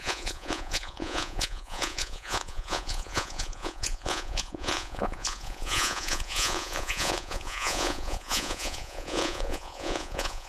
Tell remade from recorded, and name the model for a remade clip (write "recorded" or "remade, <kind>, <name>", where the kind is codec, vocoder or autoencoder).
remade, vocoder, Vocos